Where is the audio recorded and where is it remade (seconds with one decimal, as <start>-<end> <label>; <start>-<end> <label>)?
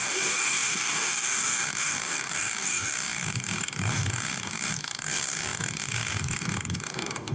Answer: 0.0-7.3 remade